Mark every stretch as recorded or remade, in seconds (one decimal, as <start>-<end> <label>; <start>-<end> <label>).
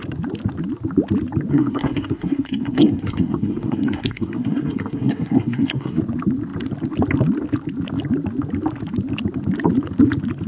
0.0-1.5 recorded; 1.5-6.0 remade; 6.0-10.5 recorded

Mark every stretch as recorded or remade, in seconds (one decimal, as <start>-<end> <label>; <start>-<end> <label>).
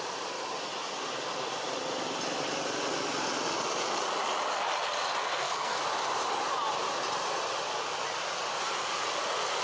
0.0-5.2 recorded; 5.2-5.8 remade; 5.8-9.6 recorded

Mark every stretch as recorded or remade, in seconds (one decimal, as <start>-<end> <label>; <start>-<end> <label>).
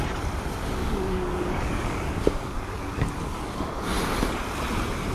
0.0-0.8 recorded; 0.8-3.9 remade; 3.9-5.1 recorded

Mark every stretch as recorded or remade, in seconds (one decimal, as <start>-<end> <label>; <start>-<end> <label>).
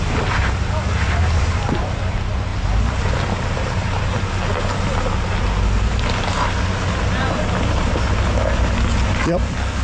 0.0-9.8 recorded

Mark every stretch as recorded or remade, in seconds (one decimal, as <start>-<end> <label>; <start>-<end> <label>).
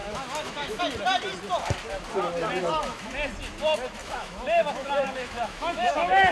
0.0-0.8 remade; 0.8-2.6 recorded; 2.6-3.1 remade; 3.1-4.0 recorded; 4.0-6.3 remade